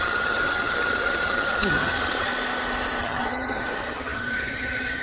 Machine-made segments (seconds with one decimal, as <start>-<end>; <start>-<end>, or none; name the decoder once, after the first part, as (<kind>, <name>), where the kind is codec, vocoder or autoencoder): 0.0-2.3 (vocoder, HiFi-GAN); 3.0-5.0